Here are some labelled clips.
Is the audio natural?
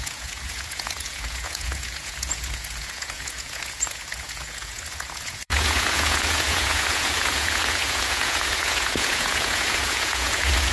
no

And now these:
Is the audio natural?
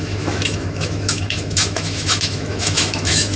no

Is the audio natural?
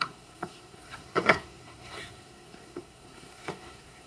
no